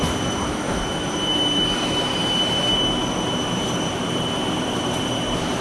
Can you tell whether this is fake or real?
fake